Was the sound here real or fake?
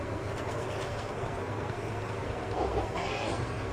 fake